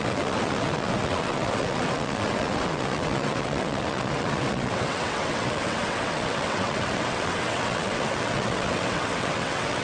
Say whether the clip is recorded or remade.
remade